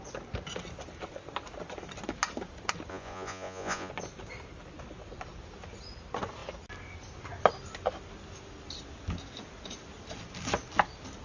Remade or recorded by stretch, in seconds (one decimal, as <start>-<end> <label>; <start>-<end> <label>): 0.0-2.9 recorded; 2.9-3.9 remade; 3.9-11.2 recorded